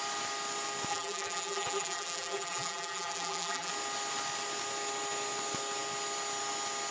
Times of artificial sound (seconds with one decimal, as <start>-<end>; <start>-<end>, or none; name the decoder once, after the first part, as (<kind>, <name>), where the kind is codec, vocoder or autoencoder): 0.9-3.7 (vocoder, BigVGAN v2)